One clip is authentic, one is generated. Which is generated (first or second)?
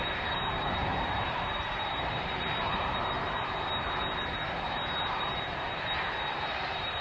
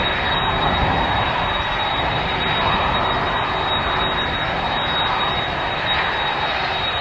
first